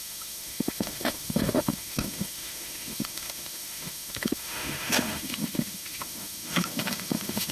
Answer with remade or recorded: remade